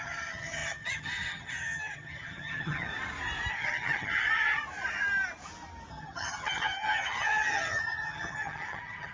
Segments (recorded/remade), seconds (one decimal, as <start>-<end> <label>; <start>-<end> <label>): 0.0-2.9 remade; 2.9-3.5 recorded; 3.5-4.6 remade; 4.6-5.9 recorded; 5.9-9.1 remade